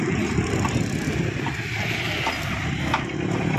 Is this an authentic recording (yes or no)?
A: yes